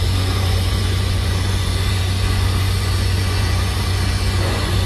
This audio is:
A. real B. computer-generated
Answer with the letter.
B